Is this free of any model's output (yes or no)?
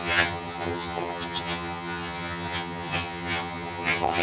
no